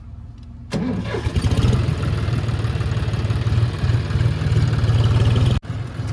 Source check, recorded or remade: recorded